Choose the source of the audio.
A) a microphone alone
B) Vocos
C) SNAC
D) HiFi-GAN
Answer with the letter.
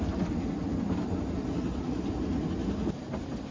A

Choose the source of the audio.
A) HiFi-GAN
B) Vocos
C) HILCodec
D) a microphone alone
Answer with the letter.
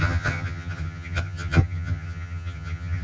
A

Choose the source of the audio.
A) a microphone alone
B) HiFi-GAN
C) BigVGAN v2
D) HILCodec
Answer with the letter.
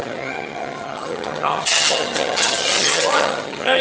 B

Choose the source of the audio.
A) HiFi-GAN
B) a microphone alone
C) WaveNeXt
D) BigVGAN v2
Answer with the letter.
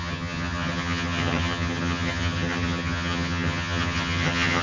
A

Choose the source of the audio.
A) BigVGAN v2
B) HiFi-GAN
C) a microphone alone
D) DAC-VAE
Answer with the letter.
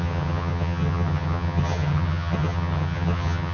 B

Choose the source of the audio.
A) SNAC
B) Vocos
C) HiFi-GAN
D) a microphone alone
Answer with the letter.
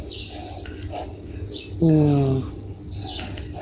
D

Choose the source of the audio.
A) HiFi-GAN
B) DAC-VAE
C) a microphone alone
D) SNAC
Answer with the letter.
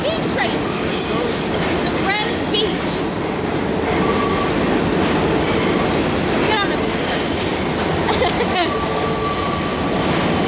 C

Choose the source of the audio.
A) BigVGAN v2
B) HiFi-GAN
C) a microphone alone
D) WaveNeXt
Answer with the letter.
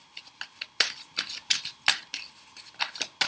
C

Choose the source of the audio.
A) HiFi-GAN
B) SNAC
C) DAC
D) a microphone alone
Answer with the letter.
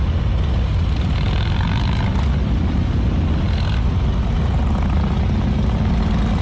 D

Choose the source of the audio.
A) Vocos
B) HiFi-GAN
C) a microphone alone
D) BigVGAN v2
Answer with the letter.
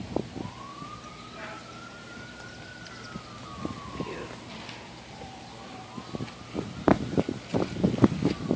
C